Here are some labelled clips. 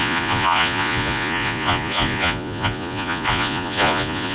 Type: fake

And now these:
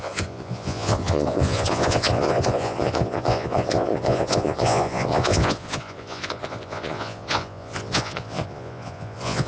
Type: fake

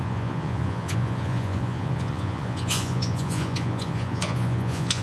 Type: fake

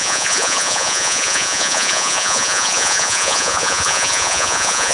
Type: fake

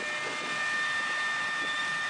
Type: real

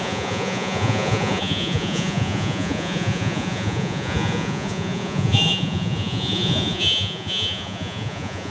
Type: fake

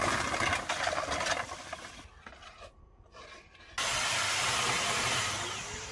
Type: real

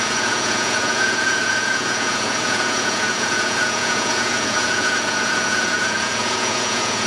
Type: fake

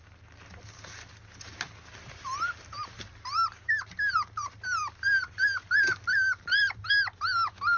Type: real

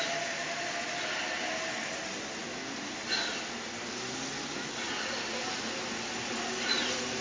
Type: real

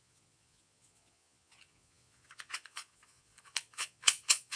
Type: fake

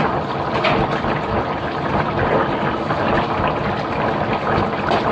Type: real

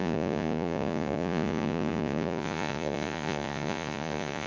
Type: fake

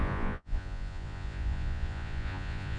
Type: fake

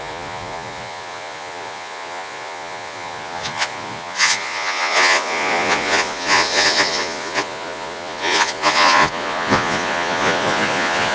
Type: fake